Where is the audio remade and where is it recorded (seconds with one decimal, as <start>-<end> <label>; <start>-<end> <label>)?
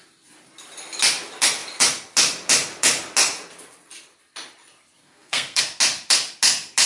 0.0-5.0 recorded; 5.0-5.6 remade; 5.6-6.9 recorded